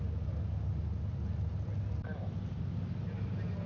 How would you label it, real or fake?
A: real